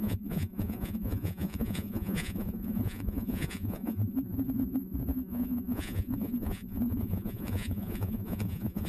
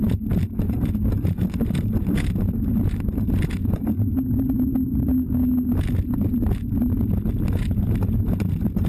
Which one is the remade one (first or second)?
first